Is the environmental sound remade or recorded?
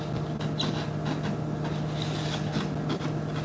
recorded